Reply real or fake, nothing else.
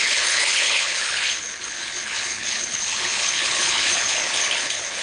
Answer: fake